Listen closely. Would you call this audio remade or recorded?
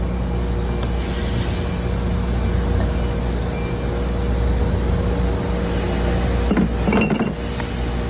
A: recorded